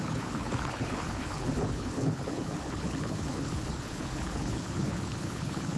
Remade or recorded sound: remade